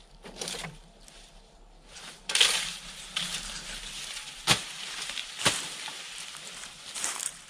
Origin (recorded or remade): remade